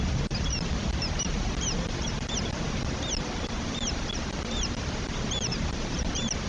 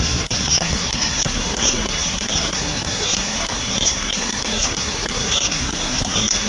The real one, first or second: first